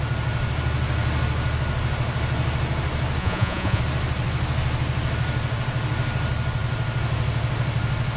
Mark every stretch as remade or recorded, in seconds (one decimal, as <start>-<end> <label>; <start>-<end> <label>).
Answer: 0.0-3.2 recorded; 3.2-3.8 remade; 3.8-8.2 recorded